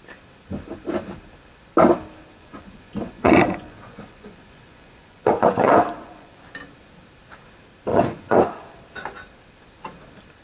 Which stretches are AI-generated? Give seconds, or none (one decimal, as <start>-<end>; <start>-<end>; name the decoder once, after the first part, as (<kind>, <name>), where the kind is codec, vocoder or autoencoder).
2.3-6.4 (vocoder, Vocos); 7.9-8.8